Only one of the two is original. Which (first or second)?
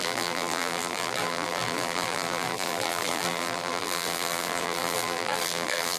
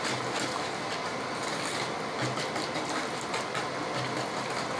second